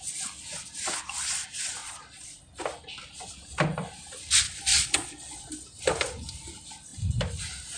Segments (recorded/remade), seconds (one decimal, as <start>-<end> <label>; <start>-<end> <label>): 0.0-1.8 recorded; 1.8-2.4 remade; 2.4-4.7 recorded; 4.7-5.5 remade; 5.5-7.8 recorded